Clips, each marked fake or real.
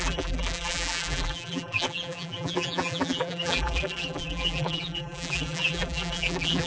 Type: fake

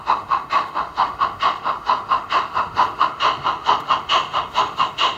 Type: fake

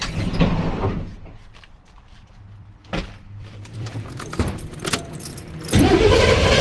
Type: fake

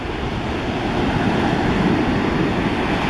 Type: real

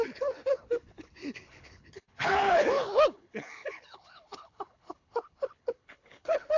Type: fake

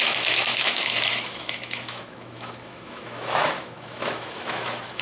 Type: fake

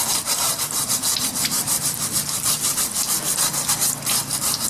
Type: real